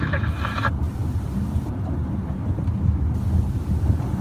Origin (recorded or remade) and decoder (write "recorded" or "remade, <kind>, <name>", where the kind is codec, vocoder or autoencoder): recorded